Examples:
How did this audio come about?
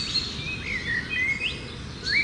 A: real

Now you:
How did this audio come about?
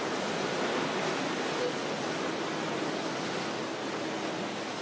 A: real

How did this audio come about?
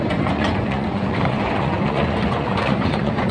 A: fake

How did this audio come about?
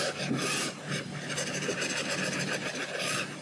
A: real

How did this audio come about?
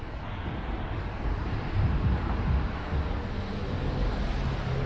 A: real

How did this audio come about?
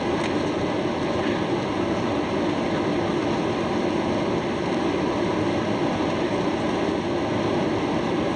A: real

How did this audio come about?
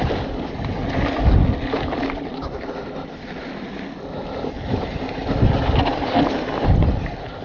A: real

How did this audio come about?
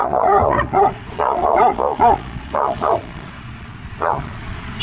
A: fake